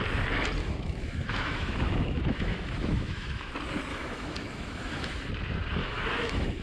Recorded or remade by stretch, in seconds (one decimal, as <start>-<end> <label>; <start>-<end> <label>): 0.0-0.6 recorded; 0.6-3.5 remade; 3.5-3.9 recorded; 3.9-5.3 remade; 5.3-5.8 recorded; 5.8-6.6 remade